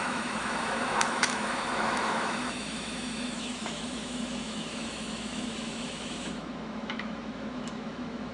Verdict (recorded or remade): remade